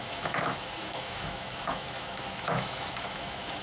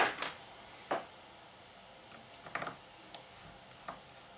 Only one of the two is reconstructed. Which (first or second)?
first